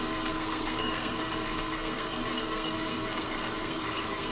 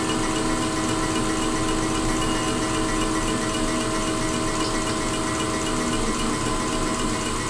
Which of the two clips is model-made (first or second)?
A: first